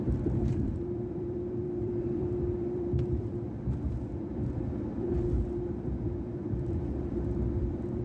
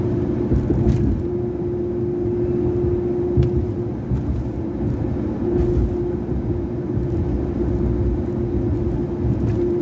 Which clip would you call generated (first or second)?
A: first